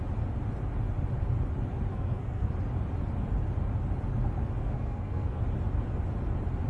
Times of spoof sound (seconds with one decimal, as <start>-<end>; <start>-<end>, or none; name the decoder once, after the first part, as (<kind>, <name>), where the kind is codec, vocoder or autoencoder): 1.9-2.5 (codec, SNAC); 4.6-5.4